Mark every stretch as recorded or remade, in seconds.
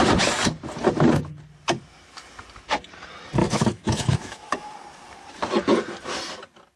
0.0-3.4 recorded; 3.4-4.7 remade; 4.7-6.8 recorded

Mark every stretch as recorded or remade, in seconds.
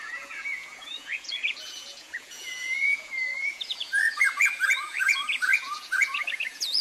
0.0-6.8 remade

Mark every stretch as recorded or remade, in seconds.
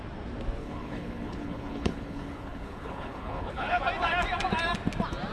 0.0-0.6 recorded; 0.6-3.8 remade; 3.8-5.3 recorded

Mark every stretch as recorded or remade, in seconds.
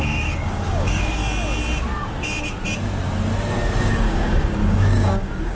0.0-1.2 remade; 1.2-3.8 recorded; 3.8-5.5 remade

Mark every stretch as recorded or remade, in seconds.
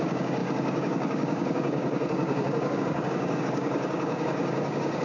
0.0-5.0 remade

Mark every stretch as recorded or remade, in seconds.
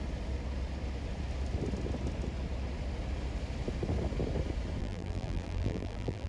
0.0-4.8 recorded; 4.8-6.3 remade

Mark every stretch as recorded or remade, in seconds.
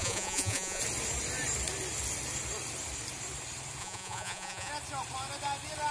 0.0-0.8 remade; 0.8-3.8 recorded; 3.8-4.7 remade; 4.7-5.9 recorded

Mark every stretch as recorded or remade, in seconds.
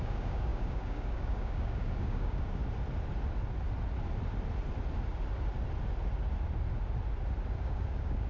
0.0-2.6 remade; 2.6-7.6 recorded; 7.6-8.3 remade